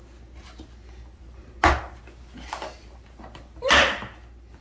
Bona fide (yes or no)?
yes